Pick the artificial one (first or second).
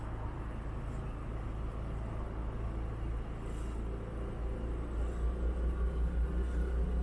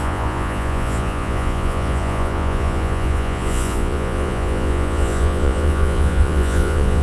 second